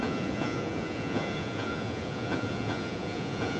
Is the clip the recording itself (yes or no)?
no